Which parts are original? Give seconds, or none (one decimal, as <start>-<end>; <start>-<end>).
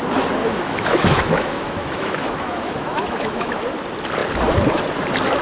0.0-0.4; 3.6-5.4